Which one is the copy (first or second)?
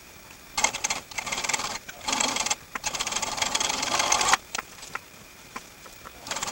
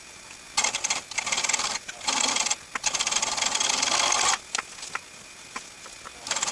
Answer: first